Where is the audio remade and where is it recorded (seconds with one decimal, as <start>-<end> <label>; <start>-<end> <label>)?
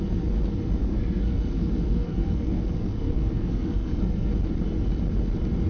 0.0-0.9 recorded; 0.9-4.3 remade; 4.3-5.7 recorded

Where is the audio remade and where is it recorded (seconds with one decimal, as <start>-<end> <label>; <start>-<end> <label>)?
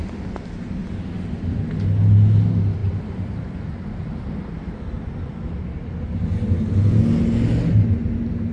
0.0-0.8 recorded; 0.8-1.6 remade; 1.6-2.8 recorded; 2.8-5.3 remade; 5.3-8.5 recorded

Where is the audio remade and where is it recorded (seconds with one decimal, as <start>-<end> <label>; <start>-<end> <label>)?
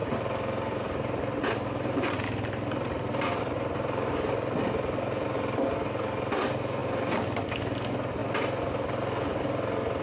0.0-4.1 remade; 4.1-10.0 recorded